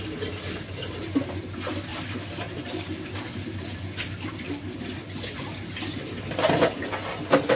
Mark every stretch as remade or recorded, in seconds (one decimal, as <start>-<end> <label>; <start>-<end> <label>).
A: 0.0-1.9 recorded; 1.9-6.5 remade; 6.5-7.6 recorded